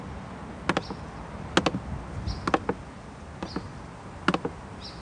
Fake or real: real